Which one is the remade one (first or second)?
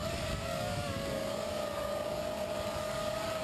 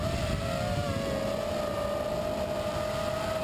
first